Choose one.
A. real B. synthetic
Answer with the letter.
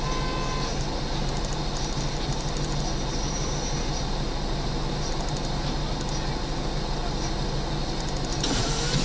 A